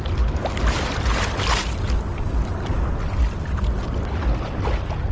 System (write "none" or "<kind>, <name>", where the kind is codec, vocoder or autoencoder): none